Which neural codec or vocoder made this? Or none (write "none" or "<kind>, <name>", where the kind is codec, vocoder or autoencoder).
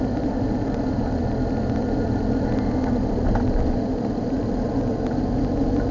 none